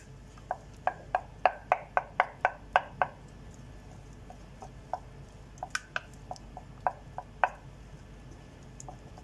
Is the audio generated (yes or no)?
no